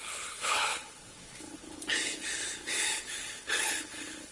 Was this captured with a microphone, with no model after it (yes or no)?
no